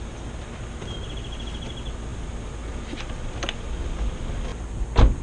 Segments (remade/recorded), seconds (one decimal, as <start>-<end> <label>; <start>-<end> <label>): 0.0-4.5 recorded; 4.5-5.2 remade